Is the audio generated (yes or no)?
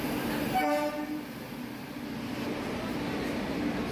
no